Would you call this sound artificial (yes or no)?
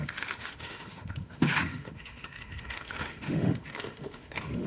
yes